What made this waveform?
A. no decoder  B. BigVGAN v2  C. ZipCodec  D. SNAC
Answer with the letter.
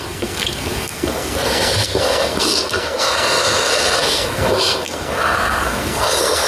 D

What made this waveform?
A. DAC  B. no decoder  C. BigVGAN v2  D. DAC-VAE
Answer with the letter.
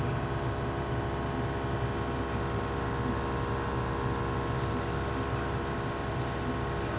B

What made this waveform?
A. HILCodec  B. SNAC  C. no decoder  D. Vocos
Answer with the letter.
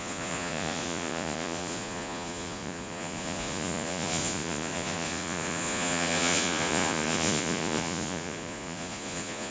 D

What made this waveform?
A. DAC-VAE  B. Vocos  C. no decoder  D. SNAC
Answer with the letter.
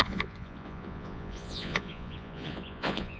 B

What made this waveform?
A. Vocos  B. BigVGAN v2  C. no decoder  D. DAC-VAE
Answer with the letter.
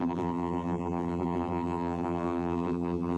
B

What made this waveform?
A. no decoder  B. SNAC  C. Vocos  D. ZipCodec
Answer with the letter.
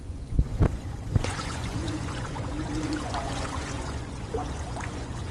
C